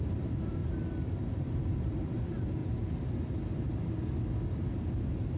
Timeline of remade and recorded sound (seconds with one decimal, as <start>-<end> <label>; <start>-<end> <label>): 0.0-0.6 remade; 0.6-1.3 recorded; 1.3-2.6 remade; 2.6-5.4 recorded